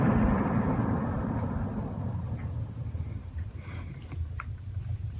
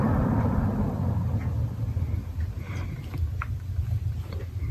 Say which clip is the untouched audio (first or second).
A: second